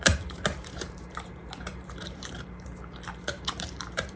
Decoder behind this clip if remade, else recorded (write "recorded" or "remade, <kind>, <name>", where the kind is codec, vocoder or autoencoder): remade, vocoder, BigVGAN v2